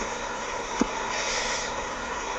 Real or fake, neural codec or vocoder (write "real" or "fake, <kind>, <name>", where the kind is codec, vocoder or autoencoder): fake, codec, SNAC